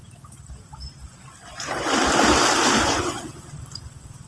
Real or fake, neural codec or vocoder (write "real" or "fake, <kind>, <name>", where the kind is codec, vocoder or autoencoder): real